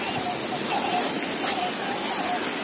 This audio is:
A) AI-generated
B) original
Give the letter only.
B